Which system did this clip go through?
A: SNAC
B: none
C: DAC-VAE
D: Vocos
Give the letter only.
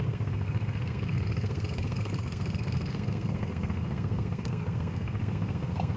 A